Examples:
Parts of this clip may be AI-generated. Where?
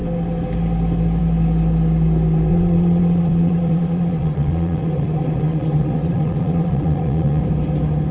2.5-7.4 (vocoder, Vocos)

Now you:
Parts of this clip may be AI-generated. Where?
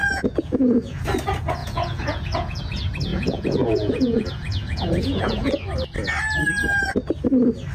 0.0-1.0 (vocoder, Vocos); 1.6-2.6; 3.1-5.5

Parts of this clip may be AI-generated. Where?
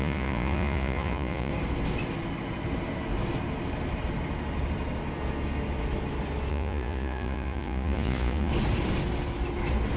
0.0-1.5 (vocoder, Vocos); 6.5-8.5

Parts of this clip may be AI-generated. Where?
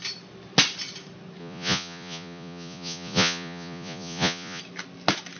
1.4-4.6 (vocoder, Vocos)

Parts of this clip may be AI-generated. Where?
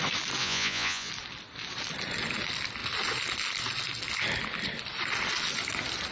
0.4-1.1 (vocoder, Vocos)